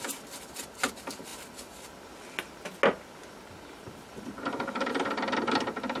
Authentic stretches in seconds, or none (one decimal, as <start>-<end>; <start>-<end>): 0.0-6.0